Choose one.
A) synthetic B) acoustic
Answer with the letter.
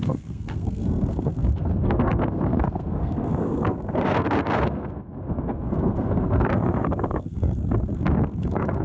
A